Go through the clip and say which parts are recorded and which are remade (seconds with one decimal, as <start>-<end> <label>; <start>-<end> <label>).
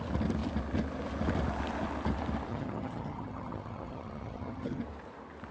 0.0-2.5 recorded; 2.5-4.8 remade; 4.8-5.5 recorded